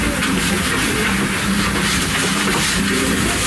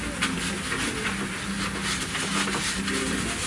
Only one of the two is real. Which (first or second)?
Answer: second